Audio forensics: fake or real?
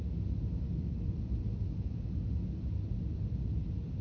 real